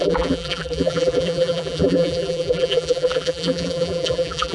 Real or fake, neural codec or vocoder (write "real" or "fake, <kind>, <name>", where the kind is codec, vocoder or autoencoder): fake, vocoder, BigVGAN v2